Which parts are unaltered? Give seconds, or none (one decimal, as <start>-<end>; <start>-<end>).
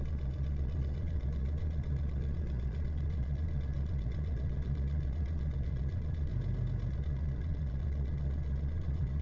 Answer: 6.3-6.9